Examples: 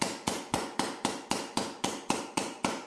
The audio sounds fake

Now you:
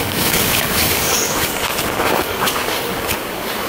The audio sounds fake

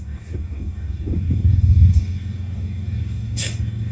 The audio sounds fake